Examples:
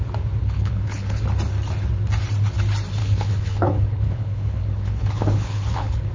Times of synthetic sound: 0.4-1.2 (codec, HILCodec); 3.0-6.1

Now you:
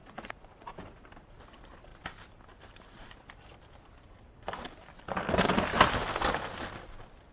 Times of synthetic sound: 0.0-0.8 (vocoder, Vocos)

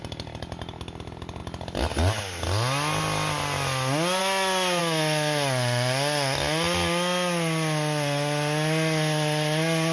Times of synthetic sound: none

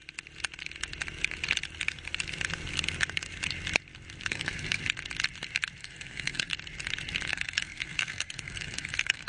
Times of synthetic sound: 4.3-4.8 (codec, SNAC); 5.8-6.5; 7.3-9.3

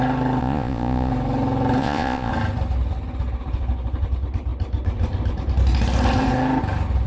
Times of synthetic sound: 0.4-1.1 (vocoder, Vocos); 1.8-2.3

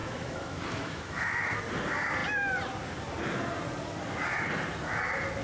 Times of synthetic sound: 0.0-1.6 (autoencoder, DAC-VAE)

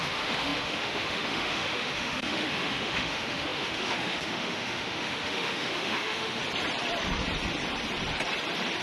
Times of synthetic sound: 0.0-6.4 (autoencoder, DAC-VAE)

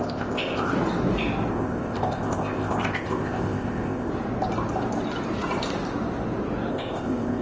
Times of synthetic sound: 0.0-0.7 (codec, ZipCodec); 1.5-4.1; 6.7-7.4